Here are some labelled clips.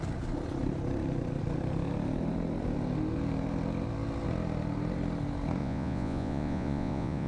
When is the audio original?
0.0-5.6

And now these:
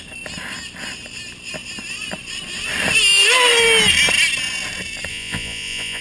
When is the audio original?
0.0-5.1

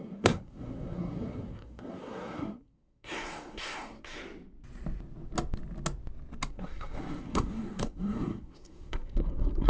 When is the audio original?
4.2-6.5